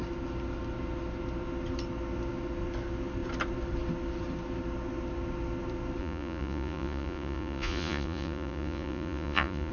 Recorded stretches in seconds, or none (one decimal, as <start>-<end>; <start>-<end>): 0.0-6.0